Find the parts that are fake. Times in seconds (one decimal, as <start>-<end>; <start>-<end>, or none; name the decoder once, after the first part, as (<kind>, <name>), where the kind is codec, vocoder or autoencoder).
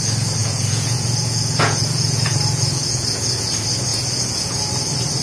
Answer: 0.4-3.5 (vocoder, Vocos); 3.9-4.7